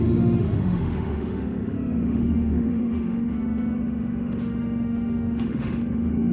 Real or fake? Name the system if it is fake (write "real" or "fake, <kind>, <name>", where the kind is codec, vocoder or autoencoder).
fake, autoencoder, DAC-VAE